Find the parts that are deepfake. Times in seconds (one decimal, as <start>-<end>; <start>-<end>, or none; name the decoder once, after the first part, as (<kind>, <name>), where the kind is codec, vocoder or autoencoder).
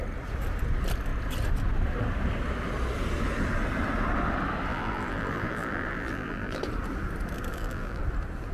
4.7-6.6 (vocoder, BigVGAN v2); 7.5-8.0